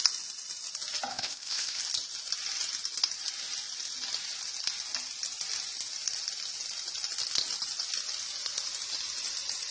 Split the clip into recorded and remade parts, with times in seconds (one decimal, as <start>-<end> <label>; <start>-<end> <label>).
0.0-1.1 recorded; 1.1-1.8 remade; 1.8-9.7 recorded